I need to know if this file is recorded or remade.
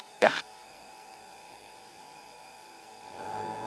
remade